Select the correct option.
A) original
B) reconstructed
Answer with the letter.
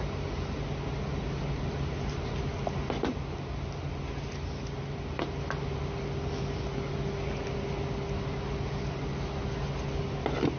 A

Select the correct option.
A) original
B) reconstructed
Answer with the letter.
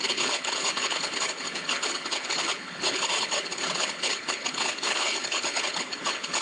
B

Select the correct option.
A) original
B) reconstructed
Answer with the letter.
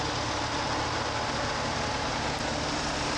A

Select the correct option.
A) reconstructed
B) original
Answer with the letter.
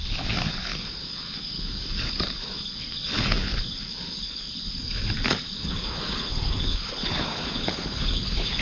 A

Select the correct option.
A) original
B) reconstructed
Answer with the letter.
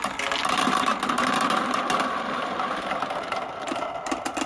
A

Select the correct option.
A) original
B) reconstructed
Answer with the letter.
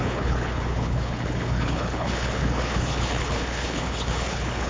B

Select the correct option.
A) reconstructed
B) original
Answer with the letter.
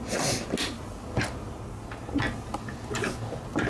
B